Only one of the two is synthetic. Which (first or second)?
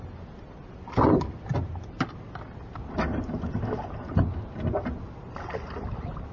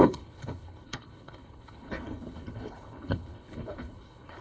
second